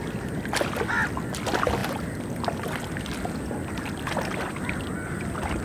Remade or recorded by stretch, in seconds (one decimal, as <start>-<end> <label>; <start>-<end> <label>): 0.0-5.6 recorded